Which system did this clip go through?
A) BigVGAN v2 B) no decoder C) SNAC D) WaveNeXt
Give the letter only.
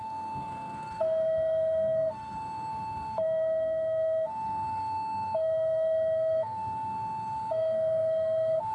C